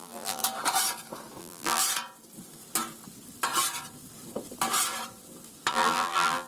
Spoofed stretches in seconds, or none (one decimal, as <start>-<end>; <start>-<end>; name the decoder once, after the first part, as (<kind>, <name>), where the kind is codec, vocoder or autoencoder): 0.0-0.4 (vocoder, BigVGAN v2); 1.4-1.8; 5.7-6.5